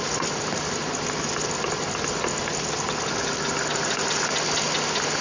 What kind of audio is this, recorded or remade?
recorded